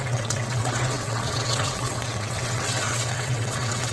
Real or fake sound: fake